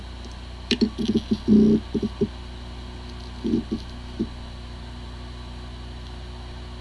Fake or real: real